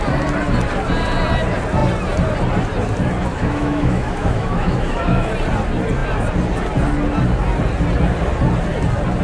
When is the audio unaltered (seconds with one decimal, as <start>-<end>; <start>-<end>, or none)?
0.0-3.3; 5.3-9.2